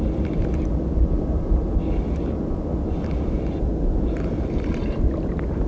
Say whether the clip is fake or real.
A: real